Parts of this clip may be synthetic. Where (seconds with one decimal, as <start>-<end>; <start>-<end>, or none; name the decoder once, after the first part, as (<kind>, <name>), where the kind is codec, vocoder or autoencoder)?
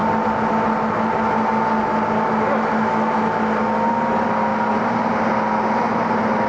none